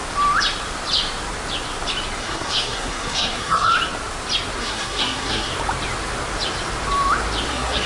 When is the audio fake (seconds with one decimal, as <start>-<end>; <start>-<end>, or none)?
2.2-3.7; 4.6-5.5; 7.5-7.9